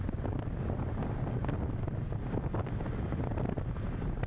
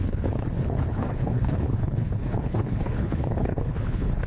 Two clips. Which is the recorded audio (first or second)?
first